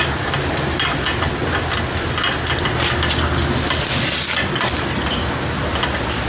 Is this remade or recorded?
recorded